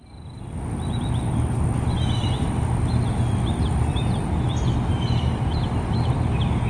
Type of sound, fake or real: real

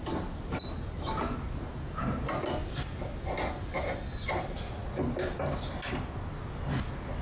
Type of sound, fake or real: real